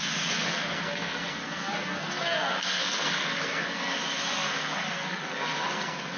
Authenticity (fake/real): fake